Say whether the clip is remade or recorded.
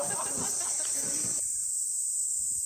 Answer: recorded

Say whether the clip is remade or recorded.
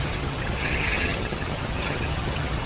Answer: remade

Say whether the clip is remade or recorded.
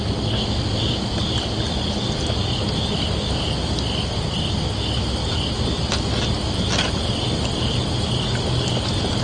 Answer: recorded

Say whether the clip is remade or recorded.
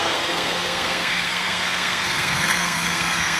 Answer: remade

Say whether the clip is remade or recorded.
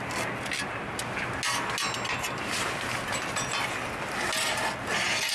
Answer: recorded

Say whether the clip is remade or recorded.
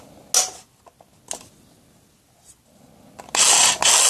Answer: recorded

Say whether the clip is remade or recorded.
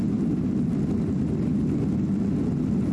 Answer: recorded